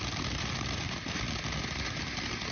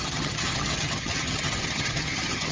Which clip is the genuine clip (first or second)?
first